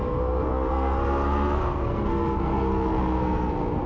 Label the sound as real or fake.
fake